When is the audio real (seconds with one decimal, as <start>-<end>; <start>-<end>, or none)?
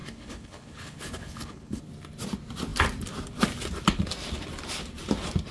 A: 1.8-5.5